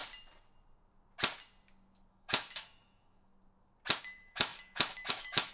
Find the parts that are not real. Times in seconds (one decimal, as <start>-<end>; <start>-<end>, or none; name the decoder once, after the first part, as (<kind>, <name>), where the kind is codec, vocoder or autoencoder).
2.1-3.3 (autoencoder, DAC-VAE); 4.0-5.5